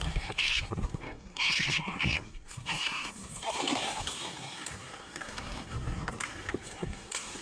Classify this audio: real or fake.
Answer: fake